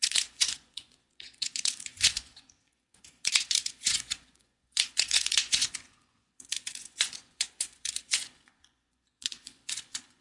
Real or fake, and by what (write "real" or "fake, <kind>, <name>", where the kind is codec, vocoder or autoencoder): fake, vocoder, Vocos